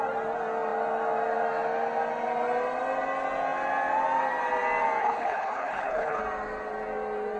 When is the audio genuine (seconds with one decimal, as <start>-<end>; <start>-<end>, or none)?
0.0-5.0; 6.2-7.4